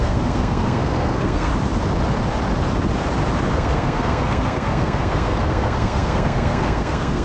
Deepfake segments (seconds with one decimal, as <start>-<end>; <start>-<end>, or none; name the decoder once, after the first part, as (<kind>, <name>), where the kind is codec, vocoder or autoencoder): 0.0-1.5 (codec, SNAC); 3.5-7.2